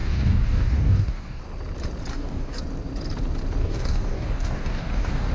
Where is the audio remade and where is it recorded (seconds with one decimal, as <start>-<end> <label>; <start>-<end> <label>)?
0.0-1.4 remade; 1.4-2.1 recorded; 2.1-2.6 remade; 2.6-3.6 recorded; 3.6-5.3 remade